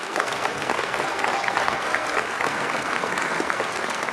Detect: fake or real fake